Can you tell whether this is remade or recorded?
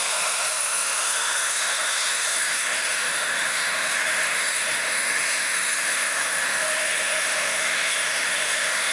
remade